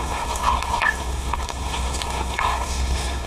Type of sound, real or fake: fake